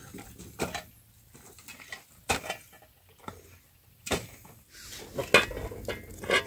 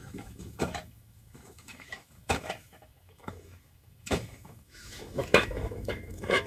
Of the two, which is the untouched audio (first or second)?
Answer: first